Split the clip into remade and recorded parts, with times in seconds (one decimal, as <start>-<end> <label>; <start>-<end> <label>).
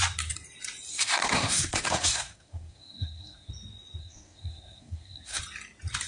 0.0-0.9 recorded; 0.9-3.5 remade; 3.5-4.0 recorded; 4.0-5.4 remade; 5.4-6.1 recorded